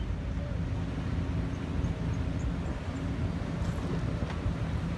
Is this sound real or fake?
real